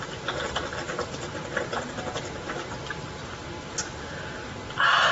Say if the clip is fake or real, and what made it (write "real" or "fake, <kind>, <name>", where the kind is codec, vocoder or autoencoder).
real